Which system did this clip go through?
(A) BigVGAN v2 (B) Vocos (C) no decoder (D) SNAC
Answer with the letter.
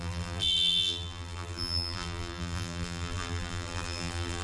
A